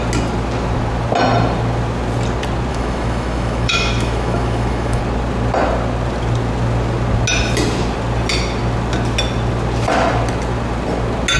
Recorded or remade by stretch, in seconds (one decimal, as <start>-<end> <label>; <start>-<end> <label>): 0.0-2.7 recorded; 2.7-5.0 remade; 5.0-11.4 recorded

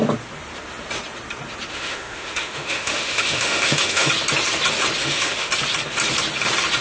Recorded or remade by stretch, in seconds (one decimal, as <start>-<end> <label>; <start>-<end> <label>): 0.0-1.7 recorded; 1.7-4.1 remade; 4.1-5.0 recorded; 5.0-5.5 remade; 5.5-6.8 recorded

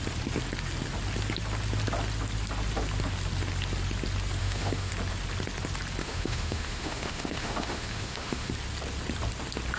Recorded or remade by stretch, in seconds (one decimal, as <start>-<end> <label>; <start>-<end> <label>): 0.0-4.4 recorded; 4.4-4.9 remade; 4.9-6.0 recorded; 6.0-8.5 remade; 8.5-9.8 recorded

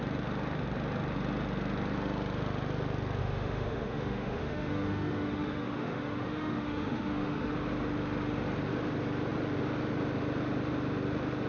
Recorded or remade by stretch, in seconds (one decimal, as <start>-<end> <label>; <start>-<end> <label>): 0.0-3.2 recorded; 3.2-7.5 remade; 7.5-11.5 recorded

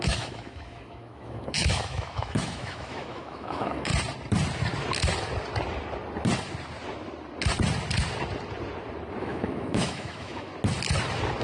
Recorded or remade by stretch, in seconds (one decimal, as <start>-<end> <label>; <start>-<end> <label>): 0.0-3.9 remade; 3.9-9.2 recorded; 9.2-10.5 remade; 10.5-11.4 recorded